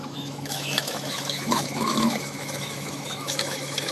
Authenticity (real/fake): fake